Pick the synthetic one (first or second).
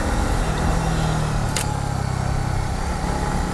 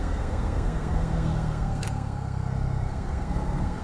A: second